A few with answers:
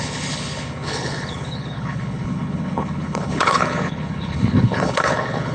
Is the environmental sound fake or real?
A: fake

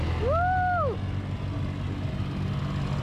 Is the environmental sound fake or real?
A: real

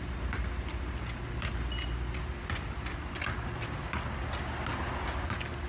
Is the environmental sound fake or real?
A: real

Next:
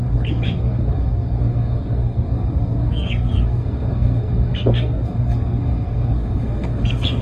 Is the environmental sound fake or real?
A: fake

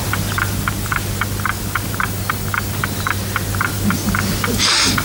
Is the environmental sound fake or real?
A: real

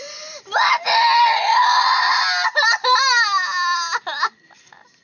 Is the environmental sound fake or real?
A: real